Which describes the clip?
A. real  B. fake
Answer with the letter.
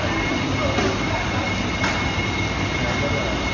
A